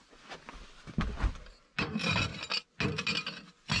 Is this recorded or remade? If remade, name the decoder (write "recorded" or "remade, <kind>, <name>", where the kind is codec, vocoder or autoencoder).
recorded